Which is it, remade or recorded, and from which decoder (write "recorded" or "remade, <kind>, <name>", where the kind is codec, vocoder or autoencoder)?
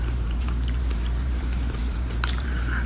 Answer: remade, vocoder, BigVGAN v2